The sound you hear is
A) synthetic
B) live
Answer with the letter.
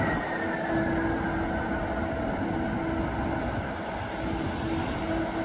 B